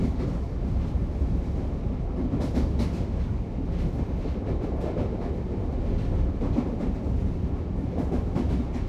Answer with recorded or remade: recorded